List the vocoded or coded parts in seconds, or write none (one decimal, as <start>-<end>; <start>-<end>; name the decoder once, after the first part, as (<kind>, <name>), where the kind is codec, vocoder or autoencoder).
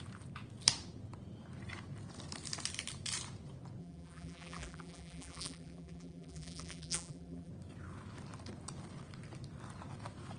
3.8-7.5 (vocoder, BigVGAN v2)